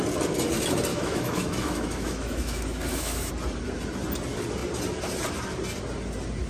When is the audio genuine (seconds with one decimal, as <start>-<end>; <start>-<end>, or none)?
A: 0.0-0.9; 3.3-6.5

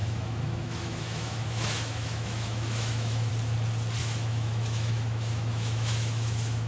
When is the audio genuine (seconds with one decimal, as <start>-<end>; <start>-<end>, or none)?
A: 3.3-4.0

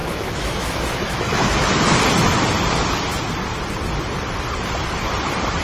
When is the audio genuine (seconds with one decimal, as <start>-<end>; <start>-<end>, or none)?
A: 1.7-5.6